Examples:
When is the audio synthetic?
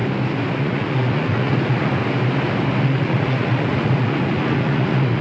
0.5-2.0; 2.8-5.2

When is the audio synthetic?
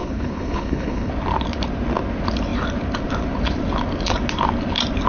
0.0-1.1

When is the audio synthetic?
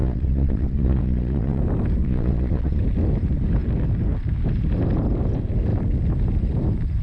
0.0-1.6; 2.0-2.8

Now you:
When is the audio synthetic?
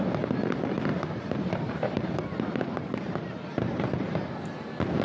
0.9-3.9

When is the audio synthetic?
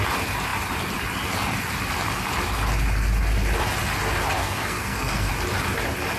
4.4-5.3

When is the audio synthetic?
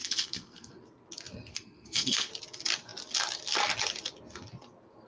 0.0-0.7; 1.5-2.3